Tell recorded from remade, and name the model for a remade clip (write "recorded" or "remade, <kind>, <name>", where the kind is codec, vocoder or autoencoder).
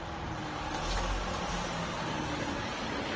recorded